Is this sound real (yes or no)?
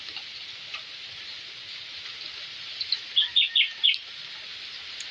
yes